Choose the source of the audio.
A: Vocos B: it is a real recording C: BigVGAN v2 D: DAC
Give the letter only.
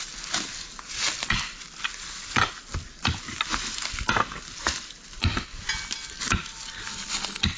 B